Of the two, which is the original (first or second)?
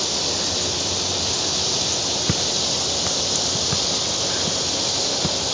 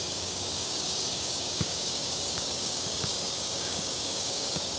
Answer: first